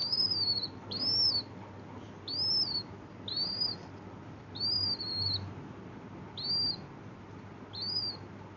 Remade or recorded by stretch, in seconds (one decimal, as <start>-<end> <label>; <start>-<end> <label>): 0.0-8.6 recorded